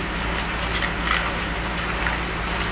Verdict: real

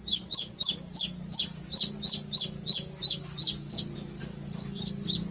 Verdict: real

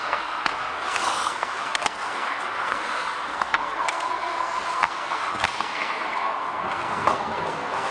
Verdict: fake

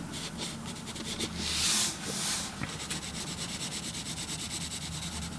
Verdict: real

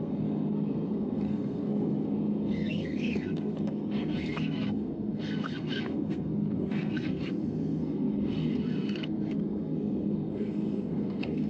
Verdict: fake